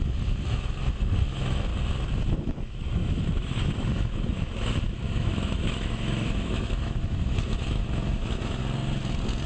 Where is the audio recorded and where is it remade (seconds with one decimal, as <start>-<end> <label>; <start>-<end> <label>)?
0.0-1.7 remade; 1.7-2.3 recorded; 2.3-8.6 remade; 8.6-9.5 recorded